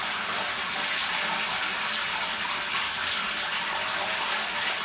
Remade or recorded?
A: recorded